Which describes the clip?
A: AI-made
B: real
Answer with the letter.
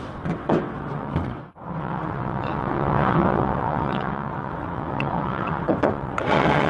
A